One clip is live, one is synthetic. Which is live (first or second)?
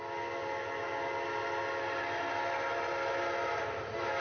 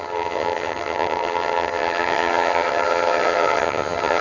first